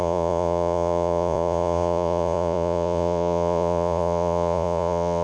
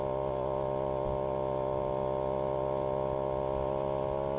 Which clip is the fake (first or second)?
first